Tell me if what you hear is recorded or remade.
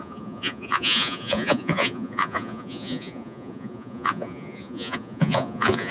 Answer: remade